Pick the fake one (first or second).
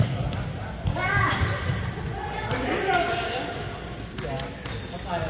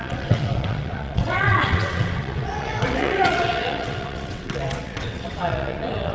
second